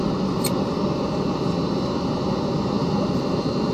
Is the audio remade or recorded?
recorded